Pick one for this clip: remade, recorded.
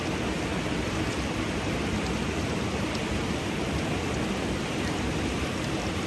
remade